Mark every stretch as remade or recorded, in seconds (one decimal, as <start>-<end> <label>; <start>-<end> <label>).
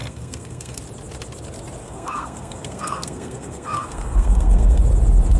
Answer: 0.0-0.8 remade; 0.8-1.8 recorded; 1.8-4.8 remade; 4.8-5.4 recorded